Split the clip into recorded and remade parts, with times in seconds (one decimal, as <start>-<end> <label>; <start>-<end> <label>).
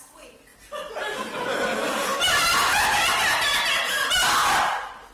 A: 0.0-5.1 recorded